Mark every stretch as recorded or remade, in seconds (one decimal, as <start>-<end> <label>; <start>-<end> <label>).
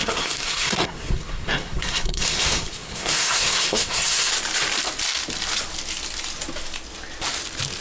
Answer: 0.0-4.3 remade; 4.3-7.8 recorded